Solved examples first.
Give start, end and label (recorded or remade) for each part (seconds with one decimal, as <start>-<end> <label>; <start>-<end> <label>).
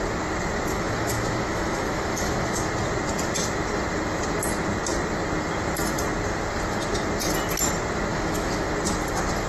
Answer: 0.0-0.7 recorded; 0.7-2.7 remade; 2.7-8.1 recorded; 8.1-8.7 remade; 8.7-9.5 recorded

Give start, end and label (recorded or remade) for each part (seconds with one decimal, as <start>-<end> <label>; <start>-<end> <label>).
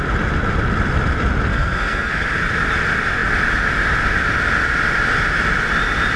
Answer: 0.0-1.5 recorded; 1.5-2.1 remade; 2.1-6.2 recorded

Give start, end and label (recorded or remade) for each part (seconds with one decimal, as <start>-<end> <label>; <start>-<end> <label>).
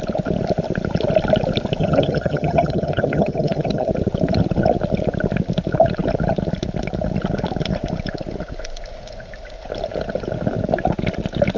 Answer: 0.0-1.8 recorded; 1.8-3.9 remade; 3.9-11.6 recorded